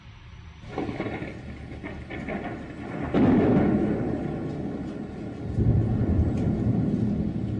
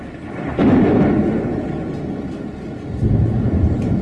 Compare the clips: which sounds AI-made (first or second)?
second